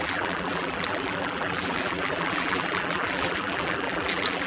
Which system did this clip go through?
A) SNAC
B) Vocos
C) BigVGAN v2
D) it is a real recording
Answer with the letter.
C